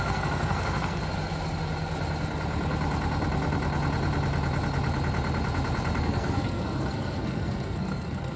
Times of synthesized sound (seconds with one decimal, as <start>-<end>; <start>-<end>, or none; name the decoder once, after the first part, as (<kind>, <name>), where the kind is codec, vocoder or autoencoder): 0.0-1.0 (codec, SNAC); 6.0-8.4